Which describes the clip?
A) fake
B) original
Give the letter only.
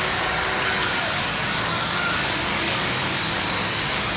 A